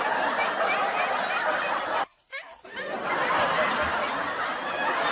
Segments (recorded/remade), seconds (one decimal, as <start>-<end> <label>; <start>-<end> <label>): 0.0-5.1 recorded

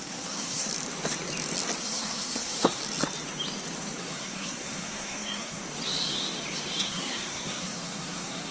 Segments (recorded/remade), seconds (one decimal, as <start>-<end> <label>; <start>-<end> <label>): 0.0-0.7 remade; 0.7-1.8 recorded; 1.8-2.8 remade; 2.8-4.0 recorded; 4.0-5.6 remade; 5.6-6.8 recorded; 6.8-8.5 remade

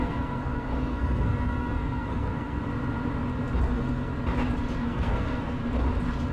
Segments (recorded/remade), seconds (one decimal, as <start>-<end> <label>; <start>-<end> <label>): 0.0-2.7 remade; 2.7-3.6 recorded; 3.6-4.1 remade; 4.1-4.8 recorded; 4.8-5.6 remade; 5.6-6.3 recorded

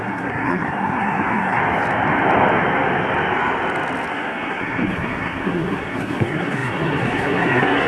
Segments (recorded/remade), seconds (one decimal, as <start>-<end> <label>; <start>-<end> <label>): 0.0-1.6 remade; 1.6-4.1 recorded; 4.1-7.9 remade

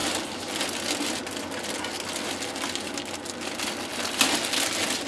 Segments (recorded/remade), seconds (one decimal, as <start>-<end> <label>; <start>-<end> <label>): 0.0-5.1 recorded

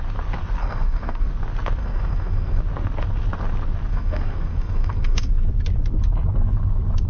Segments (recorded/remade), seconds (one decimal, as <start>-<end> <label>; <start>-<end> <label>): 0.0-0.6 recorded; 0.6-1.3 remade; 1.3-1.8 recorded; 1.8-2.6 remade; 2.6-3.9 recorded; 3.9-5.3 remade; 5.3-7.1 recorded